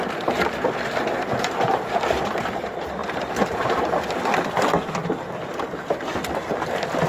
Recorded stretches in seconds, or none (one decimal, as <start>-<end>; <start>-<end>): 0.0-3.0; 4.4-6.1